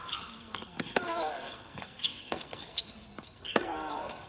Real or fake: fake